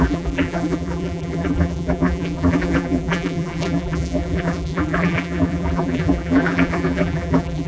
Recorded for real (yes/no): no